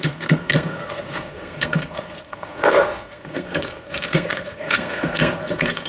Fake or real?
fake